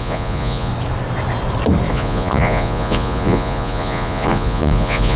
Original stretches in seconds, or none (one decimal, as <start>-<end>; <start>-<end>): 0.7-1.9